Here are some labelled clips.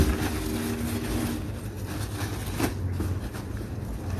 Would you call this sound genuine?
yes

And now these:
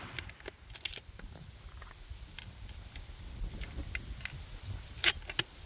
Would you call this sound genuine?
yes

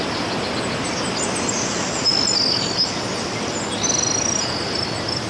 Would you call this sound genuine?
yes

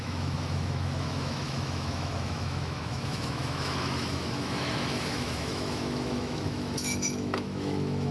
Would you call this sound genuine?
no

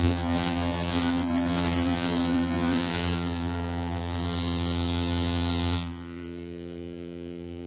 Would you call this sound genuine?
no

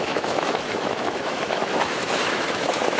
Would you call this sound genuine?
no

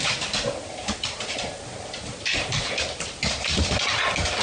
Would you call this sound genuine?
yes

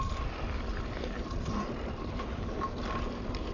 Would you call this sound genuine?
yes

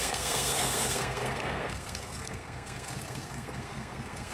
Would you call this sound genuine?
no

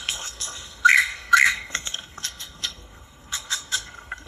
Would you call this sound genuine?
no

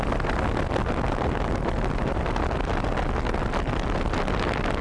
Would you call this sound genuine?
yes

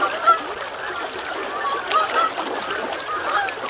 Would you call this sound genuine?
yes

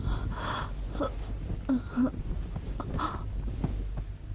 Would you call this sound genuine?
yes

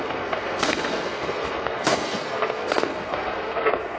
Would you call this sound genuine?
no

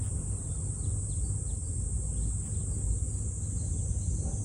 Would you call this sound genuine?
yes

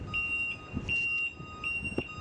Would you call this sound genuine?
yes